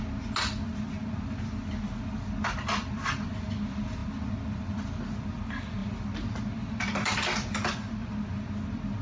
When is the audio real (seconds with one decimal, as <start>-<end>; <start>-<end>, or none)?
0.0-9.0